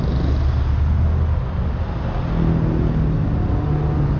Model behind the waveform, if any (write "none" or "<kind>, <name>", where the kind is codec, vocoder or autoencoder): none